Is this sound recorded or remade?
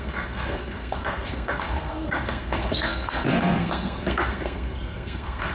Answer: remade